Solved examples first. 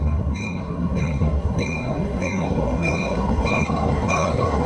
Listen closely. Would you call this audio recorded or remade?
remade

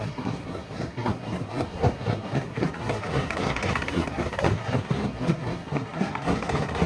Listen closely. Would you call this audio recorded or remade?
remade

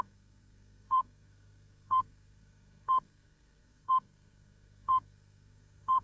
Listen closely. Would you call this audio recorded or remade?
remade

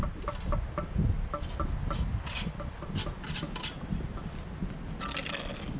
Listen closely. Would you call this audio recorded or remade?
recorded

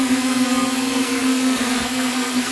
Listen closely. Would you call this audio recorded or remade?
remade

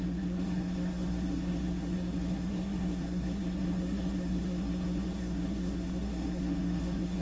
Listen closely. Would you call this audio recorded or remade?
remade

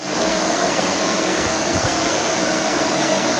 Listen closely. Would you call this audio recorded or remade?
remade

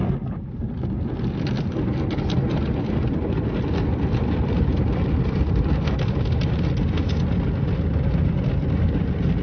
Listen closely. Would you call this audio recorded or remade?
recorded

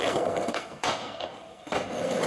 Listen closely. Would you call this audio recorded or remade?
remade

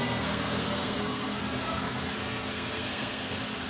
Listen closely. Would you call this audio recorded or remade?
remade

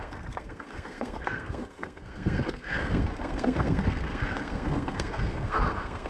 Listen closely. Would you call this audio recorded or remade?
remade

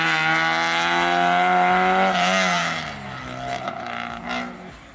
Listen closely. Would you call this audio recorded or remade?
recorded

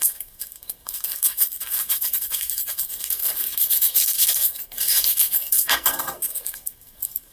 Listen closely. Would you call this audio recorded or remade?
remade